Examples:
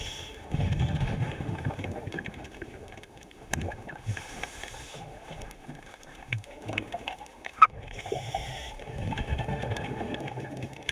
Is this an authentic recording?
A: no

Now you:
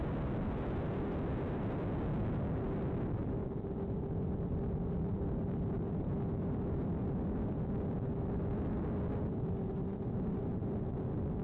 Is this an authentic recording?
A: yes